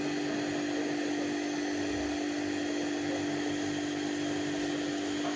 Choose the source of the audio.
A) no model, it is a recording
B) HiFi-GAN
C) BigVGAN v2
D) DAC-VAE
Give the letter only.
A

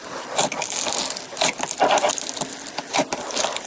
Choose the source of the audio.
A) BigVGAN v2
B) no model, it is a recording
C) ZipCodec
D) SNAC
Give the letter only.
B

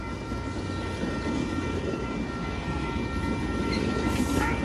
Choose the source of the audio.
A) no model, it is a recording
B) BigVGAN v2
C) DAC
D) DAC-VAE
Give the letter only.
A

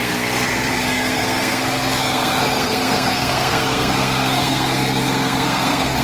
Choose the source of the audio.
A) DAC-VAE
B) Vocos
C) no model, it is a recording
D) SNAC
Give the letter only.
D